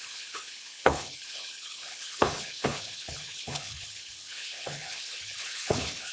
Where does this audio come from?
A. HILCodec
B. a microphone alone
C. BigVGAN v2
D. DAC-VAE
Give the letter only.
A